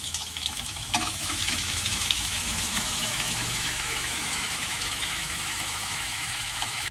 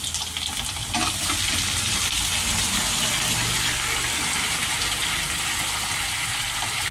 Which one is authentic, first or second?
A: second